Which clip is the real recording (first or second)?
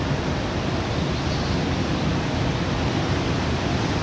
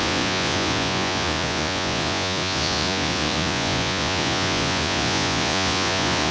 first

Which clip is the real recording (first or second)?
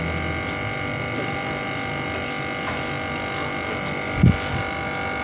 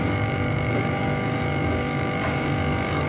first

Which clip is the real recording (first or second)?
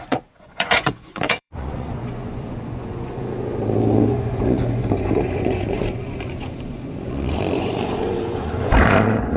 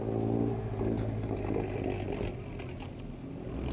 second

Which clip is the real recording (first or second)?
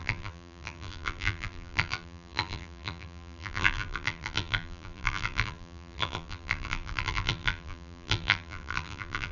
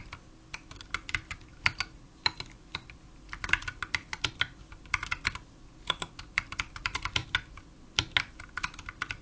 second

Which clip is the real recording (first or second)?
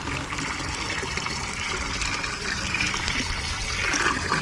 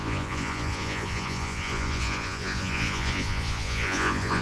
first